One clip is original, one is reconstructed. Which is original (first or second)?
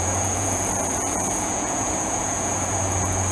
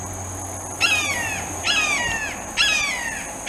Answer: second